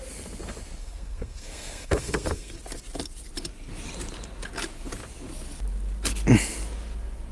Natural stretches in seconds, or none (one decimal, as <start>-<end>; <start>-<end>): 0.0-0.8; 2.6-7.3